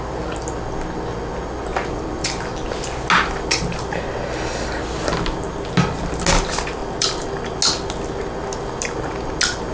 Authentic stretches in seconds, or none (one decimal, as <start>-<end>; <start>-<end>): 0.0-1.7; 2.9-6.8; 7.6-9.7